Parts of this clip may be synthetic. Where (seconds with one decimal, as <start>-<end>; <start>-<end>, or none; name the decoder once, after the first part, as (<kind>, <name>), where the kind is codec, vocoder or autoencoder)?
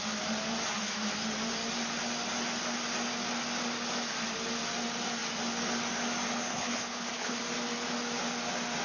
6.5-7.4 (codec, HILCodec)